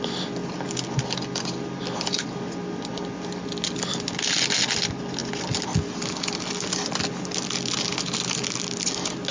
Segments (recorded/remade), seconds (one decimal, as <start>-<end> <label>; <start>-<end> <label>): 0.0-9.3 recorded